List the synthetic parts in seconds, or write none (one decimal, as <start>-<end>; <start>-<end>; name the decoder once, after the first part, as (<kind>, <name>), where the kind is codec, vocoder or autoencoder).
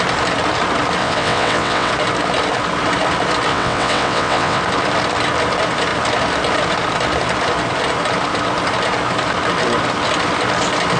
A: 1.0-1.9 (vocoder, WaveNeXt); 3.5-4.6